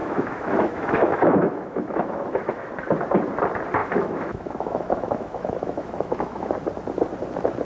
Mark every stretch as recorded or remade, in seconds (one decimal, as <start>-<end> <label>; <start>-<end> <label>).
0.0-2.7 remade; 2.7-3.8 recorded; 3.8-6.5 remade; 6.5-7.6 recorded